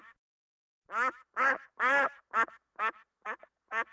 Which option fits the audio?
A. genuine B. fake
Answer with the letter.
B